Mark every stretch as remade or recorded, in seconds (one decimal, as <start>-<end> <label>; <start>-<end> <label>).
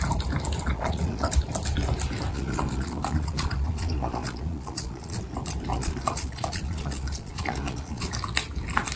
0.0-0.6 recorded; 0.6-1.3 remade; 1.3-2.3 recorded; 2.3-5.2 remade; 5.2-5.7 recorded; 5.7-8.1 remade; 8.1-9.0 recorded